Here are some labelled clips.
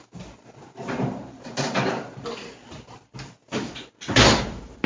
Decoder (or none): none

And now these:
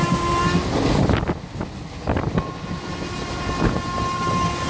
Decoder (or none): none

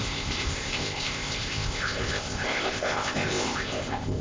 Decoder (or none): codec, ZipCodec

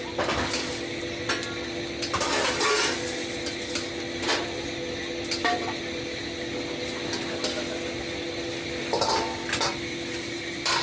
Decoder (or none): none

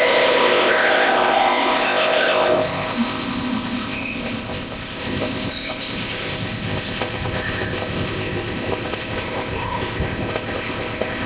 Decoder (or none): codec, ZipCodec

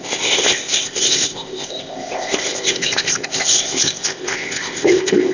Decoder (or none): codec, ZipCodec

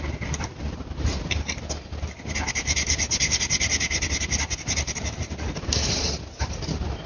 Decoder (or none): none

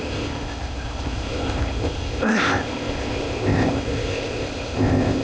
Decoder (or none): codec, ZipCodec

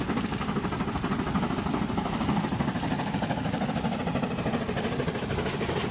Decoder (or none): none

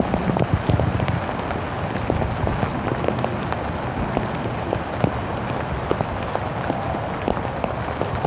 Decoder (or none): none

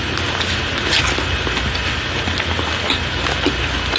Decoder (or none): none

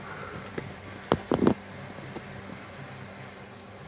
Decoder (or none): none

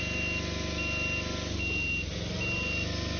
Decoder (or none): none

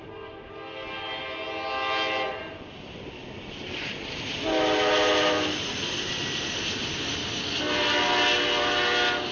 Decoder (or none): none